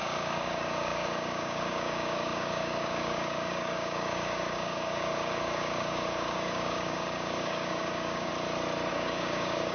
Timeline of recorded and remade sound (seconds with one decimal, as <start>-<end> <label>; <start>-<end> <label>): 0.0-8.3 remade; 8.3-8.9 recorded; 8.9-9.7 remade